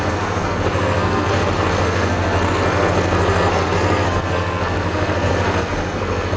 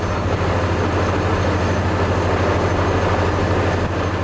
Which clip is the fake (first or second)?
first